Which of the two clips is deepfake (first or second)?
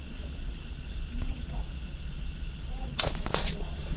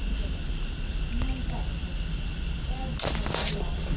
first